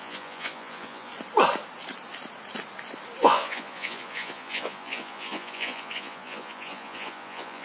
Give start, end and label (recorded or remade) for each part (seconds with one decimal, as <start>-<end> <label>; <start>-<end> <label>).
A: 0.0-1.1 remade; 1.1-3.2 recorded; 3.2-7.6 remade